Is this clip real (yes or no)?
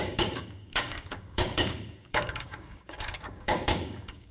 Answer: no